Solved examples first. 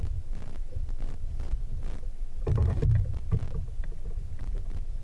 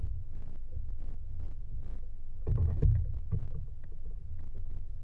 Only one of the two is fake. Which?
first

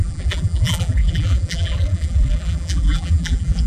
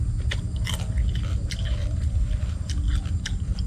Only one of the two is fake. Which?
first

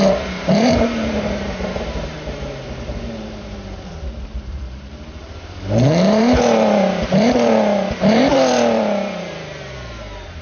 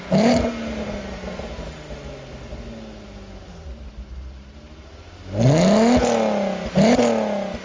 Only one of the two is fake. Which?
first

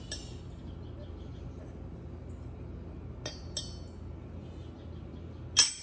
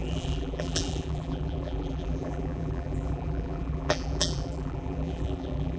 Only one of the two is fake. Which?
second